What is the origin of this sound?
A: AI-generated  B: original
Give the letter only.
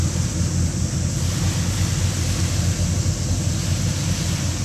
B